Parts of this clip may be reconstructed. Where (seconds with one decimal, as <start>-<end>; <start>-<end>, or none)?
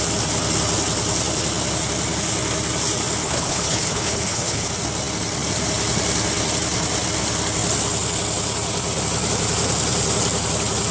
3.2-4.7